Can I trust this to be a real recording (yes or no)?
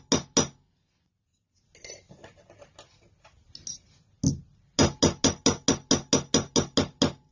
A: yes